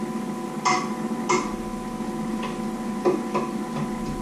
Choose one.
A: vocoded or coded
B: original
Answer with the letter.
B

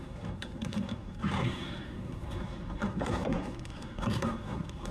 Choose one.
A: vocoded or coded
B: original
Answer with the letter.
A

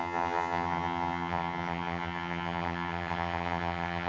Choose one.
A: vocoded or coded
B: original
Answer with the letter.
A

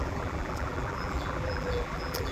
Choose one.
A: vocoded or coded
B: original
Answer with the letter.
A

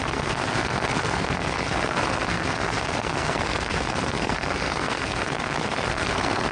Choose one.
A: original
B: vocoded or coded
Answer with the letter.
B